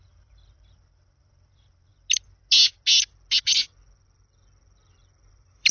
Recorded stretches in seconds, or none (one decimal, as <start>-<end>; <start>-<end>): 1.9-5.3